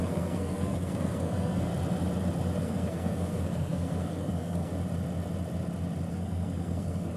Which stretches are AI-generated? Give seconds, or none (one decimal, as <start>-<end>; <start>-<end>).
0.0-1.7; 2.6-4.7; 6.1-7.2